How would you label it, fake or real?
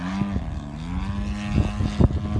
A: real